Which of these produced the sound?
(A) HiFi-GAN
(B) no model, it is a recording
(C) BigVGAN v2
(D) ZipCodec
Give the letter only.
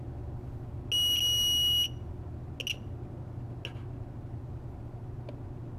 B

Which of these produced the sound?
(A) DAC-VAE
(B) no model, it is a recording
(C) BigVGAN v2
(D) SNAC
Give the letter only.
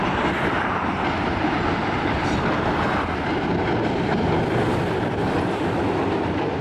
B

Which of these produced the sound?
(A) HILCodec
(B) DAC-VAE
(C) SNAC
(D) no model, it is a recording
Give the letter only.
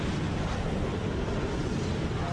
D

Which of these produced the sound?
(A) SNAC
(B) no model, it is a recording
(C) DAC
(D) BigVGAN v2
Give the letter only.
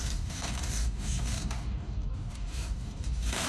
C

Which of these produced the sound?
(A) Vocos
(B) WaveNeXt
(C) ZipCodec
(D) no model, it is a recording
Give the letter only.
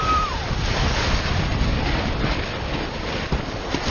D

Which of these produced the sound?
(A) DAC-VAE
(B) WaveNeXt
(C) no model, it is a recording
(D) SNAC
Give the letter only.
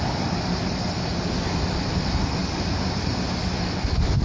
C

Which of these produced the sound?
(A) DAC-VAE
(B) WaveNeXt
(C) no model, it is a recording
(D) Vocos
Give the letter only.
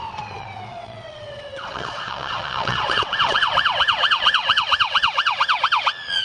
B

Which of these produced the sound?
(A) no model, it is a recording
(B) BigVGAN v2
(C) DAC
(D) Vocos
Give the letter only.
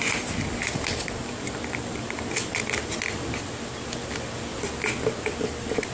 A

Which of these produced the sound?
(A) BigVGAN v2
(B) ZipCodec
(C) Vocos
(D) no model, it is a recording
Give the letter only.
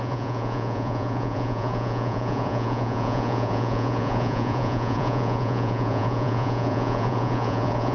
C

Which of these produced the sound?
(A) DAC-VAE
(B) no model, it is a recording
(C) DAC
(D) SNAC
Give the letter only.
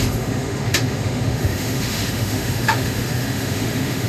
A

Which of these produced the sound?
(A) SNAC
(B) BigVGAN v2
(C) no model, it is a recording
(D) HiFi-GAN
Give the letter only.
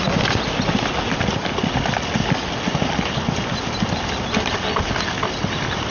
C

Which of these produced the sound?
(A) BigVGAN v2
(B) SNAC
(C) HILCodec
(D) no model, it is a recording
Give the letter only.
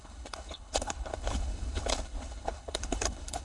C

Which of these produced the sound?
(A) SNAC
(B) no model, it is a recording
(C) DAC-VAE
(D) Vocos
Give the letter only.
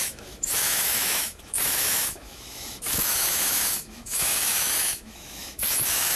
C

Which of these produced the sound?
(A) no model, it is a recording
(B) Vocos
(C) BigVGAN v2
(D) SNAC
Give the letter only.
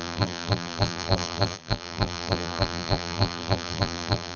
C